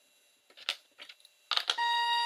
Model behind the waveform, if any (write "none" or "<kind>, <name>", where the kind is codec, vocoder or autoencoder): none